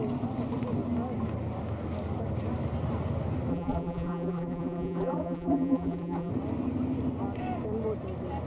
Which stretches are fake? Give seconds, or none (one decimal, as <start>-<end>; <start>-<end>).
3.5-6.3